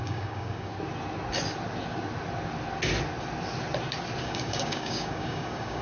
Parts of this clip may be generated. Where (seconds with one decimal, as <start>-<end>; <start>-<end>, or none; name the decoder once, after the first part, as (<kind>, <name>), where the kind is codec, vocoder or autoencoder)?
0.0-0.7 (codec, DAC); 4.2-5.8